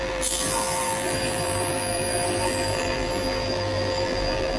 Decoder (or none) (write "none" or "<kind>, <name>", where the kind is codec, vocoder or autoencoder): vocoder, BigVGAN v2